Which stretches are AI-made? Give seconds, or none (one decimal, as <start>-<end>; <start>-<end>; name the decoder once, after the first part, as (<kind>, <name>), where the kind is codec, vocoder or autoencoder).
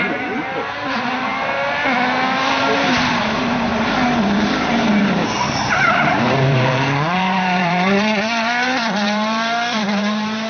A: 0.0-1.3 (vocoder, BigVGAN v2); 2.5-3.7; 5.0-10.5